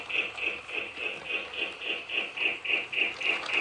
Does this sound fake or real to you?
real